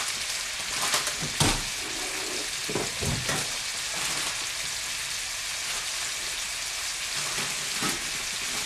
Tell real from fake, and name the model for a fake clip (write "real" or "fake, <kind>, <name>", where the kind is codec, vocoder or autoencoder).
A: real